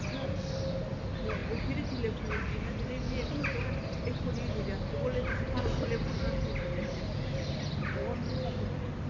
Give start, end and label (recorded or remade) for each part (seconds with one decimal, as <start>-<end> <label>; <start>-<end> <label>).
0.0-9.1 recorded